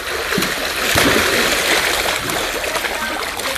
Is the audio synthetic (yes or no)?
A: no